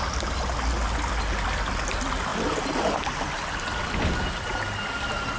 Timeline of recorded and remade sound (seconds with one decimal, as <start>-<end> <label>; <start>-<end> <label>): 0.0-5.4 recorded